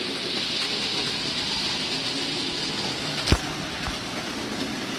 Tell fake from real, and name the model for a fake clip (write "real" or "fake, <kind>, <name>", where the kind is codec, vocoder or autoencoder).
real